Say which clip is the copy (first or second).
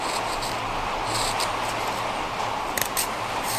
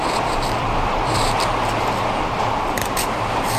second